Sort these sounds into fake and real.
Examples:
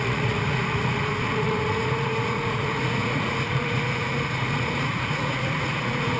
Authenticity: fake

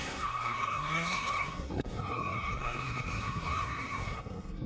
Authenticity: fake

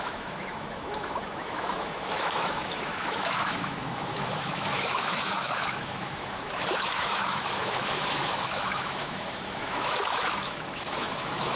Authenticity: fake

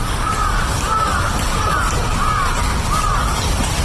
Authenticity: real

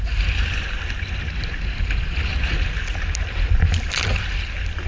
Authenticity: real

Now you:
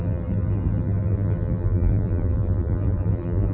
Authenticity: fake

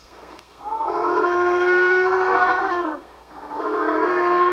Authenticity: fake